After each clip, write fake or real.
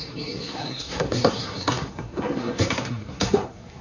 fake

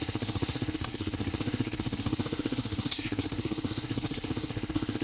fake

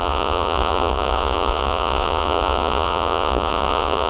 fake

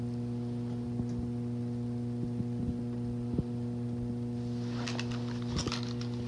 real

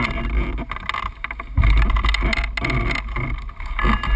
real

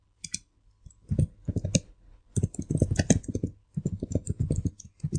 real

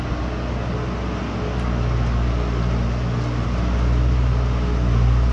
real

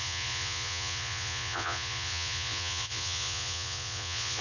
fake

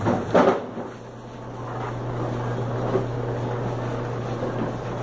real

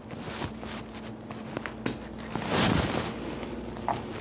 real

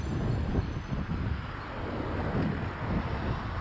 fake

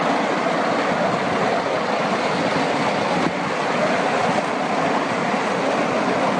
real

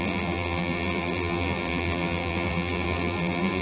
fake